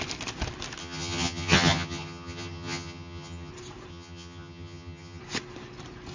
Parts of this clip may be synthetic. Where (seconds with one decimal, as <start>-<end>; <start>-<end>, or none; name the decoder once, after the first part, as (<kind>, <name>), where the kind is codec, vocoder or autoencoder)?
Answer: 0.8-3.5 (vocoder, HiFi-GAN); 3.9-5.2